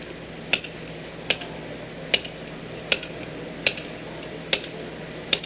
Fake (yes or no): no